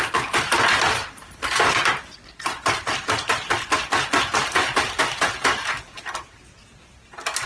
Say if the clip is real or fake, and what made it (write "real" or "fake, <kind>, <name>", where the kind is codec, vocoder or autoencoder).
real